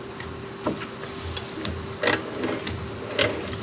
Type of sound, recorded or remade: recorded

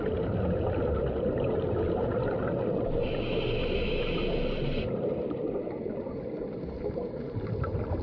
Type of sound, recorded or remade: recorded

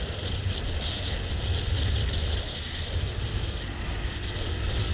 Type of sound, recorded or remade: recorded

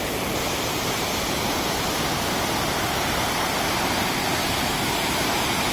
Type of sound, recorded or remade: recorded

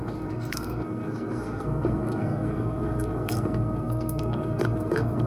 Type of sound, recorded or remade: remade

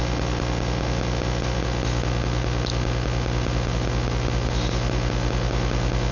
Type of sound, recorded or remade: recorded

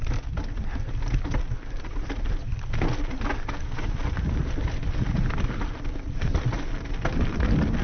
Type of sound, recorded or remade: recorded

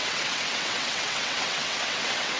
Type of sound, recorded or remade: remade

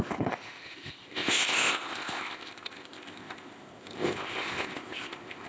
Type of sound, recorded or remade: remade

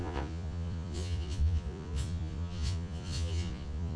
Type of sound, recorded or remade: remade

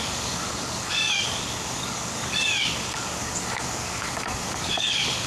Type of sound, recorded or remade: remade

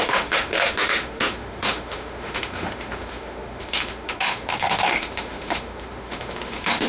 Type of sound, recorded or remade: remade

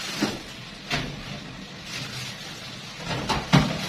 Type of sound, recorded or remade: recorded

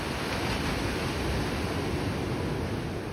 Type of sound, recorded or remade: recorded